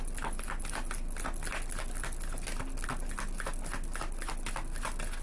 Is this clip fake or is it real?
real